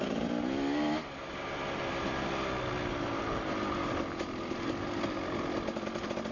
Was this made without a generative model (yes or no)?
yes